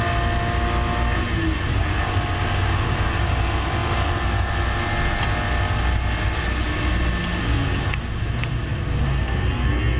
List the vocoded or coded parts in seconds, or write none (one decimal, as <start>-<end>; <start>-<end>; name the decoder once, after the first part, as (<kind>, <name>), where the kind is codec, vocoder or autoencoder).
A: none